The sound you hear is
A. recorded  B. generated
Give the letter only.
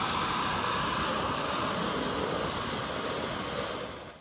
A